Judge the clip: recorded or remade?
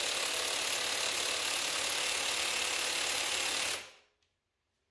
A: recorded